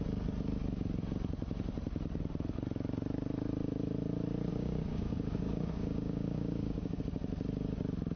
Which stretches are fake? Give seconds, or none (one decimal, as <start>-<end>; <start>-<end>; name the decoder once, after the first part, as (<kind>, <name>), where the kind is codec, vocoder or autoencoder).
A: 4.5-7.0 (codec, DAC)